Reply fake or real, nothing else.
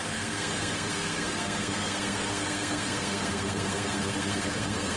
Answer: fake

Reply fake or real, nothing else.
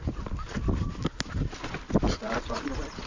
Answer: real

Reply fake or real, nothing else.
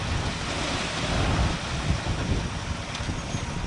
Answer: real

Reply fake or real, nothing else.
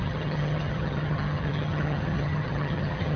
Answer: fake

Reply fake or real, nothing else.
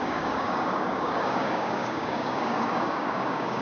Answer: fake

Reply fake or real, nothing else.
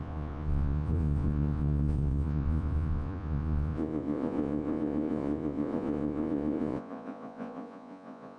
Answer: fake